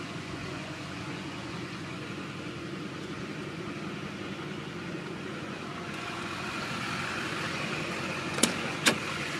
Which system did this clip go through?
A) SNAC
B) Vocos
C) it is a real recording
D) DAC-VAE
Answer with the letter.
B